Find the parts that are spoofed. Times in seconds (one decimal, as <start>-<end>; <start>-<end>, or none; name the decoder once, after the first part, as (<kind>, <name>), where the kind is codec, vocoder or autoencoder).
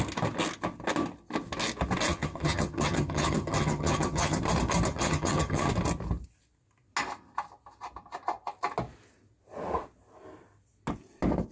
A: 2.1-4.4 (vocoder, HiFi-GAN); 4.9-5.7